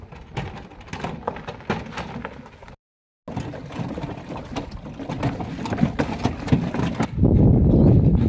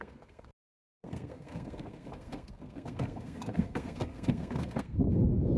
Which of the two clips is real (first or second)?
first